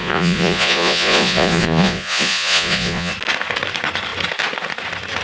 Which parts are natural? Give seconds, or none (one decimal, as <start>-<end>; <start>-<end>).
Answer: 3.1-5.2